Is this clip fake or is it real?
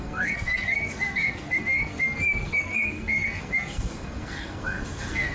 fake